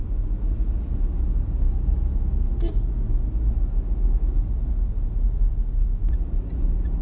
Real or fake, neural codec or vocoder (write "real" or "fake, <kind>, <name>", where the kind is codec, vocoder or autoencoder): real